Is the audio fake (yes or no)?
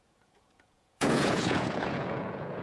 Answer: yes